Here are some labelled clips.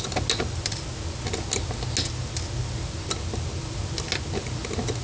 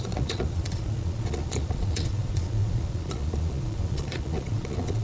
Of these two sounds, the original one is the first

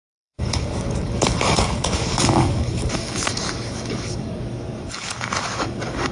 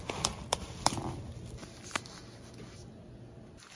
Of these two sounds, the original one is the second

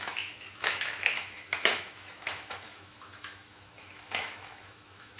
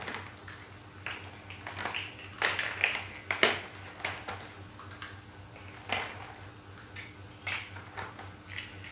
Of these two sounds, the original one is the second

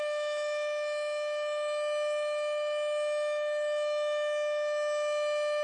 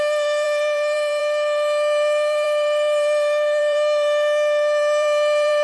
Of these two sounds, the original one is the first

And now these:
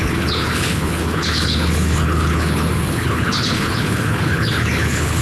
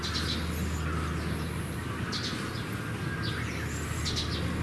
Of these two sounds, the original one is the second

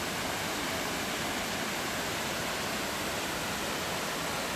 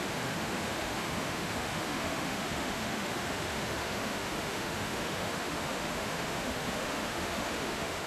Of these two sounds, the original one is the first